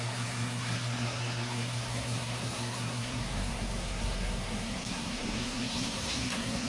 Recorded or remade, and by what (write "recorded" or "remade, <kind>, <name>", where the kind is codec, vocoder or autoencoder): remade, codec, SNAC